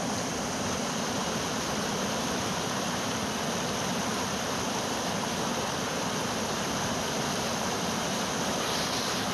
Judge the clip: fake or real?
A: fake